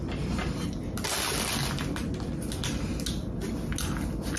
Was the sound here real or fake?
real